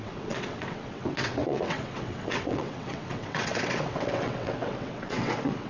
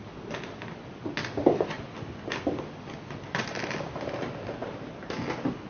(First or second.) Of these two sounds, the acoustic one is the second